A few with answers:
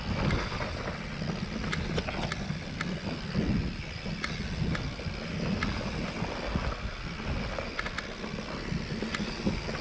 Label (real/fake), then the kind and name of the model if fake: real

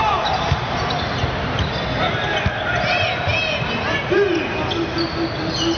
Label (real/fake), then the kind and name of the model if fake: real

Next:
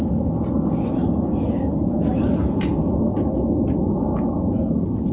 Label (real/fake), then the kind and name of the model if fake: real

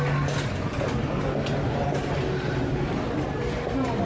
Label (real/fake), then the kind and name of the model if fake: real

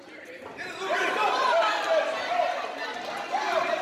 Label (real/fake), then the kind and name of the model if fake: real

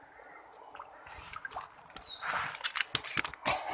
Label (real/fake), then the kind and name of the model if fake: real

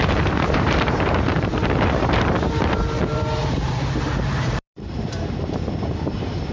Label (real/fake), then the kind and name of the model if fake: fake, vocoder, BigVGAN v2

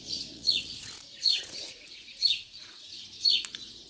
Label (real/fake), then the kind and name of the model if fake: fake, vocoder, Vocos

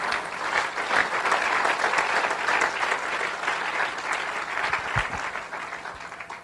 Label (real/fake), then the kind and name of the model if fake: real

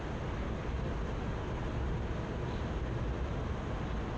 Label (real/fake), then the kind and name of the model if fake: real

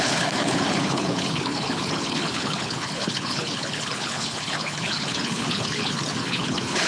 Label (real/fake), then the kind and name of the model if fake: fake, codec, HILCodec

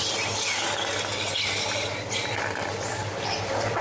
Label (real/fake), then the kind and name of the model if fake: real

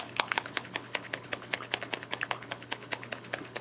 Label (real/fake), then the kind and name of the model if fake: fake, codec, HILCodec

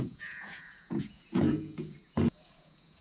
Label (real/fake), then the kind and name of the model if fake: fake, vocoder, Vocos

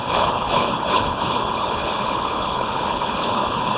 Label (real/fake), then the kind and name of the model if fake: fake, codec, HILCodec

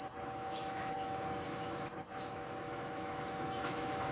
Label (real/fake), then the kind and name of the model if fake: fake, autoencoder, DAC-VAE